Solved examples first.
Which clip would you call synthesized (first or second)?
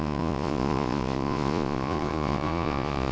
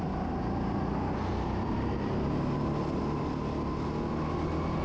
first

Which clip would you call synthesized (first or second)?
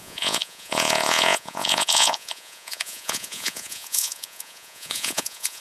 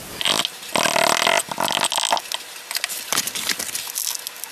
first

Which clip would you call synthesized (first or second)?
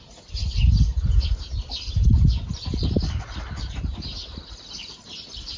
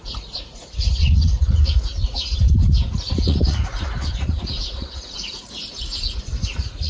second